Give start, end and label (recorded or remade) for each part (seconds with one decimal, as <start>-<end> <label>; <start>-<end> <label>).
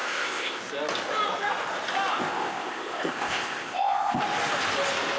0.0-0.6 remade; 0.6-2.1 recorded; 2.1-4.2 remade; 4.2-5.2 recorded